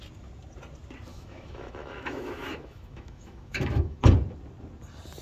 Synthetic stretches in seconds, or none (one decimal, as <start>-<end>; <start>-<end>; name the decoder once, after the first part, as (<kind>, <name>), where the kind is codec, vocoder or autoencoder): 1.1-4.0 (autoencoder, DAC-VAE)